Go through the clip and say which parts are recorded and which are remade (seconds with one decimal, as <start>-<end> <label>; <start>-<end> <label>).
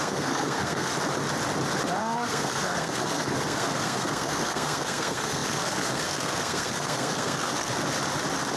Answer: 0.0-0.9 remade; 0.9-2.0 recorded; 2.0-7.7 remade; 7.7-8.6 recorded